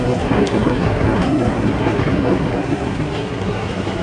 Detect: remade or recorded remade